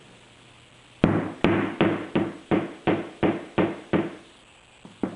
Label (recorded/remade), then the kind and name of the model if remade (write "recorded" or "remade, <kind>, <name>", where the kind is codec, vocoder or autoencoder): recorded